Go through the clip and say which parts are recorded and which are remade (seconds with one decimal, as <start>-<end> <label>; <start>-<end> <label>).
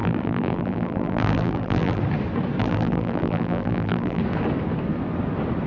0.0-2.0 remade; 2.0-2.6 recorded; 2.6-4.2 remade; 4.2-5.7 recorded